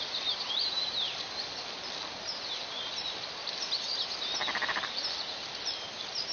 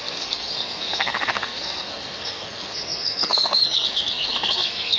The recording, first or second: first